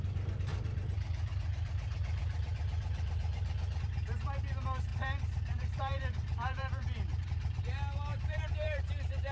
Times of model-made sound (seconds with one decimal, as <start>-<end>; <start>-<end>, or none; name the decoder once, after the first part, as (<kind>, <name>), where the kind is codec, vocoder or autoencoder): 0.5-3.8 (vocoder, BigVGAN v2); 4.9-7.6; 8.1-8.9